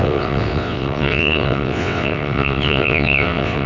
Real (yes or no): no